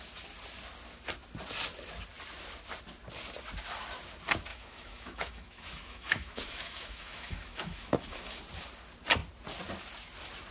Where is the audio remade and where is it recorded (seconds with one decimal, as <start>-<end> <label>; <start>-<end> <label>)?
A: 0.0-4.5 recorded; 4.5-8.4 remade; 8.4-10.5 recorded